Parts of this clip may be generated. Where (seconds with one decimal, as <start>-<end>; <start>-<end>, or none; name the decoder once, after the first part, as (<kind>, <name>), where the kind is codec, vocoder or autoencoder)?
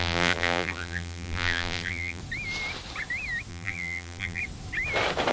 0.0-2.2 (vocoder, BigVGAN v2); 3.5-4.4